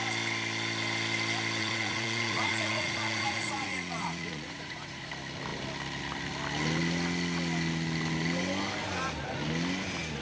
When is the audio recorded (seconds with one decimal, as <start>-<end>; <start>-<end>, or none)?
0.0-1.6; 5.1-10.2